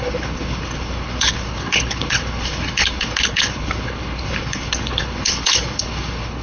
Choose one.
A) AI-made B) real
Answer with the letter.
A